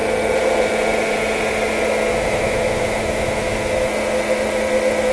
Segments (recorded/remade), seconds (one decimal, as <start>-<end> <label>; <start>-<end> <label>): 0.0-2.1 recorded; 2.1-3.9 remade; 3.9-5.1 recorded